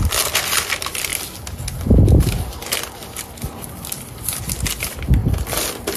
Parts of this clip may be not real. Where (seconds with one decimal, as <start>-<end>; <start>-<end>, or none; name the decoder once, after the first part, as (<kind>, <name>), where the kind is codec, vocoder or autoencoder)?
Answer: 0.0-1.1 (vocoder, BigVGAN v2); 4.7-5.2